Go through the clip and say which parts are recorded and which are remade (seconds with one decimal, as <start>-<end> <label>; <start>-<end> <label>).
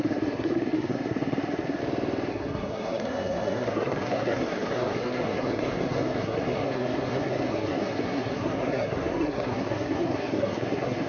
0.0-1.8 remade; 1.8-2.3 recorded; 2.3-11.1 remade